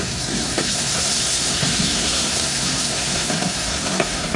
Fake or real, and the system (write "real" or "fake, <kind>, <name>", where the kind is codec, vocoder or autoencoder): fake, codec, SNAC